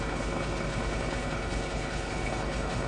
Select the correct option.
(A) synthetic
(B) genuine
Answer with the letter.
A